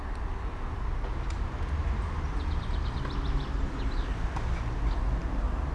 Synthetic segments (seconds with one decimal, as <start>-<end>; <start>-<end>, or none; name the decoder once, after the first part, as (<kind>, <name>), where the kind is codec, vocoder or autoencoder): none